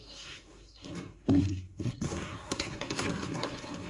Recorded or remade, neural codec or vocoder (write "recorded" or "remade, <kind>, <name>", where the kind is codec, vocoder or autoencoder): remade, codec, SNAC